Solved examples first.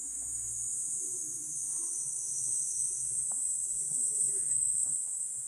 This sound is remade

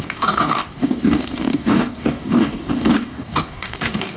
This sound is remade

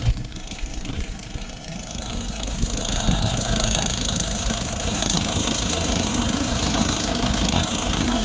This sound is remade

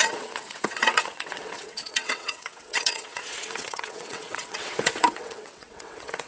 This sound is remade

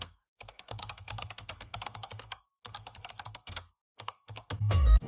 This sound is remade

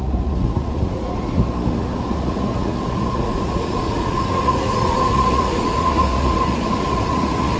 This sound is remade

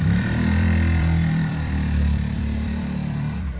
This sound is remade